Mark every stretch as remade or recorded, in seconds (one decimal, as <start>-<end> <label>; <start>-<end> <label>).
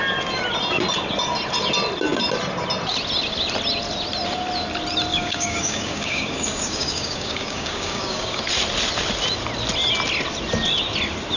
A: 0.0-5.1 recorded; 5.1-8.4 remade; 8.4-11.4 recorded